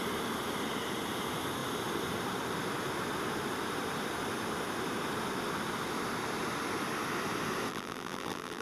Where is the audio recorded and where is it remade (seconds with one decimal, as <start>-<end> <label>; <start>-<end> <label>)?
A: 0.0-7.7 recorded; 7.7-8.6 remade